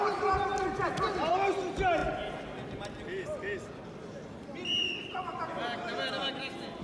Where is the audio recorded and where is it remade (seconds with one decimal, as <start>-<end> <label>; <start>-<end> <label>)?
0.0-6.8 recorded